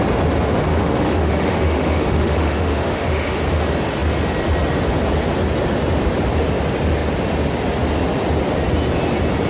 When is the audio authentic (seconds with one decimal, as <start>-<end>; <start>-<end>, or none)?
0.0-0.7; 3.4-9.5